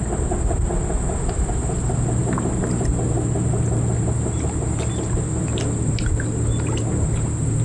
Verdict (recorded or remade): recorded